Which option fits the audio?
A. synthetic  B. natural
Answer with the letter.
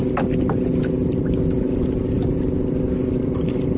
B